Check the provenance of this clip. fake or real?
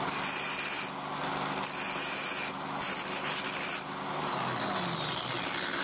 real